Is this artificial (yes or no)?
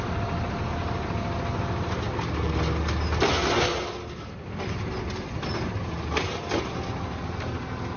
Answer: no